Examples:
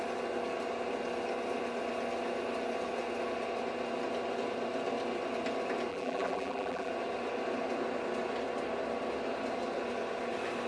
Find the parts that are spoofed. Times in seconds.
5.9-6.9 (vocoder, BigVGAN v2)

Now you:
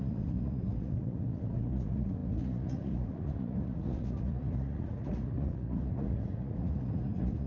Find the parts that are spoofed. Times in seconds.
0.0-7.5 (vocoder, Vocos)

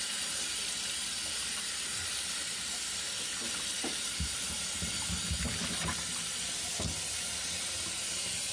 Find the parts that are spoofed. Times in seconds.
none

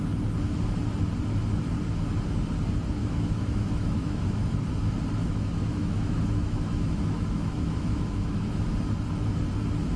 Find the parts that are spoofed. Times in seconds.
3.0-4.6 (autoencoder, DAC-VAE); 5.2-8.7

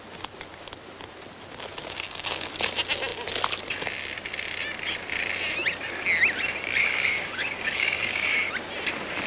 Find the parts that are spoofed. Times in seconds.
1.8-2.5 (codec, DAC); 6.8-8.5

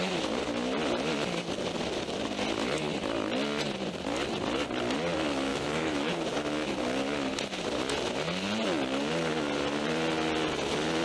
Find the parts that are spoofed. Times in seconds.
5.5-6.1 (autoencoder, DAC-VAE)

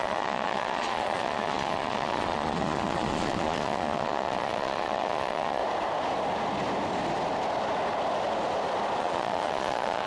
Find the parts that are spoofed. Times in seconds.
0.0-5.6 (vocoder, Vocos); 9.0-10.1

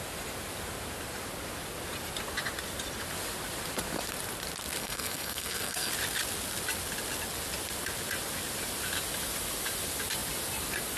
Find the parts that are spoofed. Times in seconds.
4.8-5.9 (codec, SNAC)